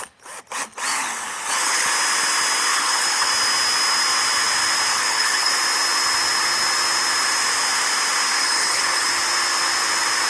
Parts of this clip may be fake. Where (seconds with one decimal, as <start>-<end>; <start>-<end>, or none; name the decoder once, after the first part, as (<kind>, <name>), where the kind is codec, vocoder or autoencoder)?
0.9-1.9 (codec, HILCodec); 2.7-3.3; 4.9-5.5; 8.4-9.1

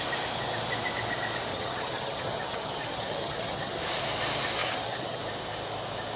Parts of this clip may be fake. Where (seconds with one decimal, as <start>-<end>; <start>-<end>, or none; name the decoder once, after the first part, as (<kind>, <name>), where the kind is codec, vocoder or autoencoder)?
1.5-3.8 (vocoder, HiFi-GAN); 4.6-5.2

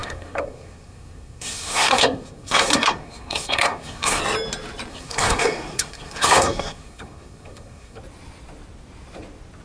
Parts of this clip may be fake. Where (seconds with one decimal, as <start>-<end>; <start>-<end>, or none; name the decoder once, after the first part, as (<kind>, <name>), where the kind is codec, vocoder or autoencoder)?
0.0-4.2 (codec, SNAC); 4.9-8.0

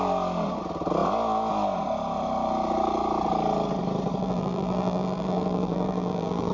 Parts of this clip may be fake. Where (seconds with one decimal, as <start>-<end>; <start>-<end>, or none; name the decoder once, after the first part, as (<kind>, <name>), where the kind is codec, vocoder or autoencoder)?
4.2-6.5 (vocoder, BigVGAN v2)

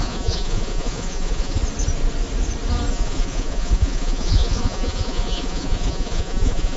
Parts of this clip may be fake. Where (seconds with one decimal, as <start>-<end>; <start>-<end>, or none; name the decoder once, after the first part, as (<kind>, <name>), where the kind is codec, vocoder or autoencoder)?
0.0-1.6 (vocoder, Vocos); 2.9-6.8

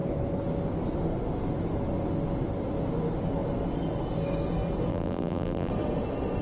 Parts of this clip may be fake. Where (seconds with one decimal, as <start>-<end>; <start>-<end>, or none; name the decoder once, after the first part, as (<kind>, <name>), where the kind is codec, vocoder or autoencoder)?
4.9-5.7 (vocoder, BigVGAN v2)

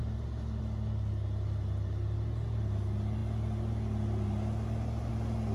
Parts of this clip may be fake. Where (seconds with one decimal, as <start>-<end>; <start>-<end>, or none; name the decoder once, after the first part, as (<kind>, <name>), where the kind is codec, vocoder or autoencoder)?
none